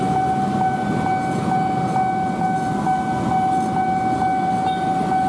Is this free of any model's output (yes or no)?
yes